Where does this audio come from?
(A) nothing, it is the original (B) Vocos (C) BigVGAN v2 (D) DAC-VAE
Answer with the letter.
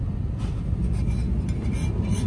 A